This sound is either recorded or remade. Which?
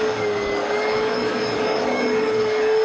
remade